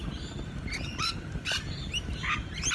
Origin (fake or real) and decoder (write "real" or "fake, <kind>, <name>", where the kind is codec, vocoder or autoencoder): real